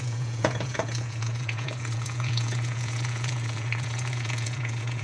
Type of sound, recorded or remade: remade